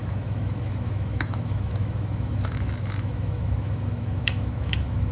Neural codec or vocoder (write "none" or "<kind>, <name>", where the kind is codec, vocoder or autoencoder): autoencoder, DAC-VAE